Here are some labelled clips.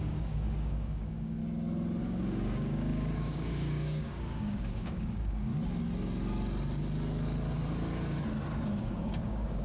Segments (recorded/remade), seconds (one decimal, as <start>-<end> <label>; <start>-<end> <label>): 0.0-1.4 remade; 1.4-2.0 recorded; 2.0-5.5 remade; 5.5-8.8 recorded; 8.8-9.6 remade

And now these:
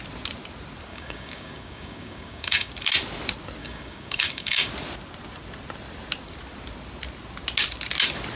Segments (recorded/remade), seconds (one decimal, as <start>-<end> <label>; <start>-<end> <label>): 0.0-0.9 recorded; 0.9-2.7 remade; 2.7-3.6 recorded; 3.6-4.7 remade; 4.7-8.4 recorded

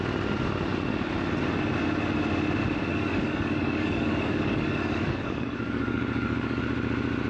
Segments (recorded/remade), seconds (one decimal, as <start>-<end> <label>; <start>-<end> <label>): 0.0-2.9 recorded; 2.9-6.6 remade; 6.6-7.3 recorded

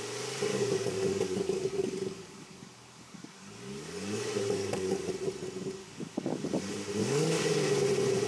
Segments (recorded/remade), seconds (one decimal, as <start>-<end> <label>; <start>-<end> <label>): 0.0-0.5 recorded; 0.5-5.1 remade; 5.1-5.8 recorded; 5.8-6.4 remade; 6.4-7.0 recorded; 7.0-7.5 remade; 7.5-8.3 recorded